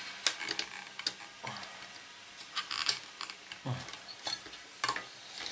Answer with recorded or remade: recorded